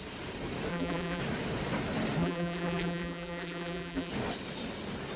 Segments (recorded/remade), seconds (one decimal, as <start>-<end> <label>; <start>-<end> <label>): 0.0-0.7 recorded; 0.7-1.2 remade; 1.2-2.2 recorded; 2.2-4.1 remade; 4.1-5.2 recorded